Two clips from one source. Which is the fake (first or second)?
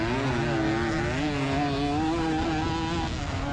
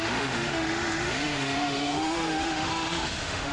second